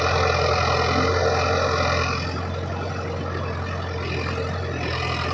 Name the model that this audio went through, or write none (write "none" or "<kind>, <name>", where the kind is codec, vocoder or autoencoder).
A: none